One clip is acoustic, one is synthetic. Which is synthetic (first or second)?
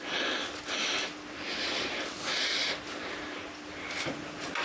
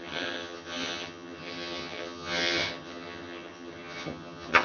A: second